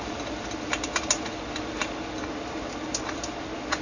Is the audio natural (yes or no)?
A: yes